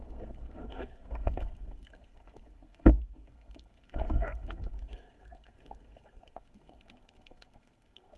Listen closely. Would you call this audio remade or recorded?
remade